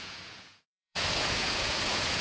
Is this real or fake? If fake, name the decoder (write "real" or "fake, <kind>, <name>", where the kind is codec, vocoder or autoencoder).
fake, vocoder, Vocos